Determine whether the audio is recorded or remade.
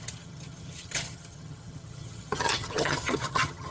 remade